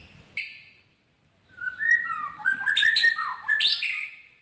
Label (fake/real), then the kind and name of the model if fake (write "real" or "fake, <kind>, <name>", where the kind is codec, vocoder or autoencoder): real